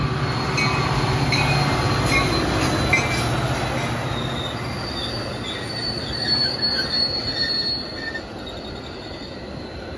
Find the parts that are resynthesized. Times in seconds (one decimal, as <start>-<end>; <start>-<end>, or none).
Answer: none

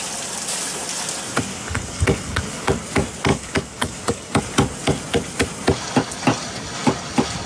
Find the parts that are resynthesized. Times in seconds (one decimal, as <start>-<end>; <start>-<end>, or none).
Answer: 1.5-2.8; 3.3-4.4

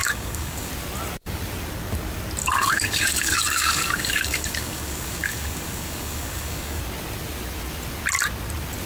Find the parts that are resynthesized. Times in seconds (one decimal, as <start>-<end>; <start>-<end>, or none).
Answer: 0.0-0.7; 2.4-6.8

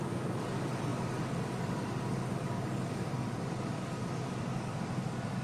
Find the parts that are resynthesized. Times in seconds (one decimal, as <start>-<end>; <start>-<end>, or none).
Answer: 0.0-5.4

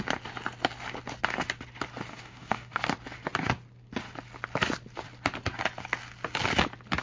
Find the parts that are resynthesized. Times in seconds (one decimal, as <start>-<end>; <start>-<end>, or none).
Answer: 2.1-2.8

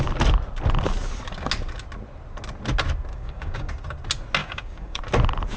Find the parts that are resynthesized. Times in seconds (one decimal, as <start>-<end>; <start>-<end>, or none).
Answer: 3.1-3.7; 4.4-5.0

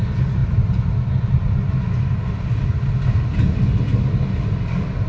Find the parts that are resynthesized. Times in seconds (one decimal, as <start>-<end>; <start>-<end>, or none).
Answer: none

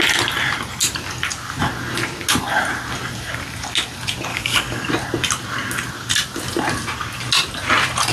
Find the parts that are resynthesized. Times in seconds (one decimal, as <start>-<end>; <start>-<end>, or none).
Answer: 4.3-4.9